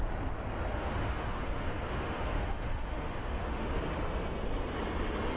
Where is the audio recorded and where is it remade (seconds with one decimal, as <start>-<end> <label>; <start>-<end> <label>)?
0.0-0.7 recorded; 0.7-3.8 remade; 3.8-5.4 recorded